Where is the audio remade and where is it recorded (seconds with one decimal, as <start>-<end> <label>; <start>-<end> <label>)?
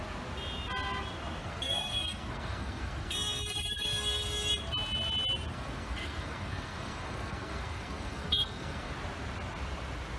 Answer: 0.0-1.4 recorded; 1.4-4.5 remade; 4.5-5.5 recorded; 5.5-8.9 remade; 8.9-10.2 recorded